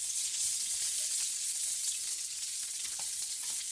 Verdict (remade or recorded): remade